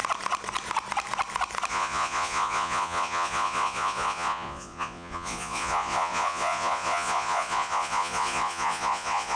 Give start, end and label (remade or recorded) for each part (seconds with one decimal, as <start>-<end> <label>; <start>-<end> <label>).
0.0-1.7 recorded; 1.7-9.4 remade